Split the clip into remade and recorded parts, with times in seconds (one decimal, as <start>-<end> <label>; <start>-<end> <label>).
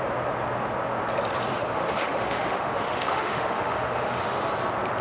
0.0-1.5 recorded; 1.5-4.5 remade; 4.5-5.0 recorded